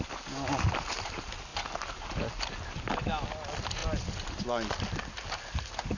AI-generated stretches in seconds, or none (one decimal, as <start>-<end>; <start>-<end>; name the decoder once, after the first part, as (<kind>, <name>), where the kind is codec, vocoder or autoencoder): none